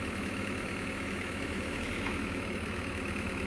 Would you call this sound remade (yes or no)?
yes